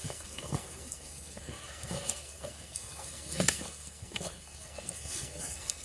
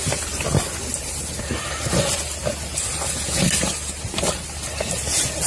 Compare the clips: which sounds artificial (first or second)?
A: first